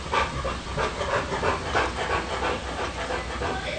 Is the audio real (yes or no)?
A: yes